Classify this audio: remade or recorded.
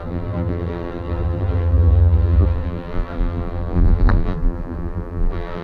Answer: remade